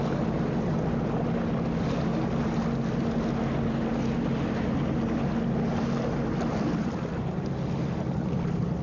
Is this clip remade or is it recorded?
recorded